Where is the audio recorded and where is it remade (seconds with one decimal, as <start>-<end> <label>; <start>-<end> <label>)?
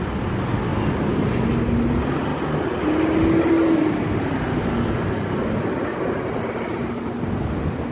0.0-7.9 recorded